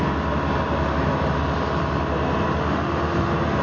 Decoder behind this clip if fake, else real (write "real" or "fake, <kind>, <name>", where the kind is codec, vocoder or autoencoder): real